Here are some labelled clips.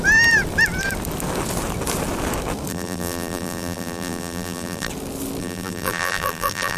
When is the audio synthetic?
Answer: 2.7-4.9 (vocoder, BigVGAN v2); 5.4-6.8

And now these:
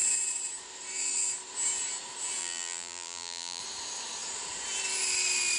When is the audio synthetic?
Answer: 2.4-3.6 (vocoder, BigVGAN v2)

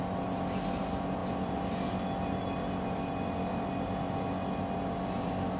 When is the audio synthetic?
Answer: 0.0-5.6 (vocoder, BigVGAN v2)

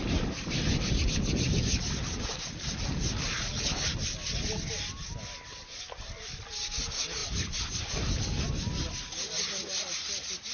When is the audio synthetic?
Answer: none

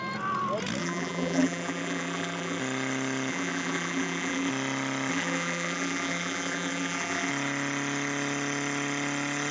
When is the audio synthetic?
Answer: 0.8-2.6 (vocoder, BigVGAN v2); 3.3-4.5; 5.1-7.3